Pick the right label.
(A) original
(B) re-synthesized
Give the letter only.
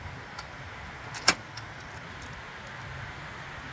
A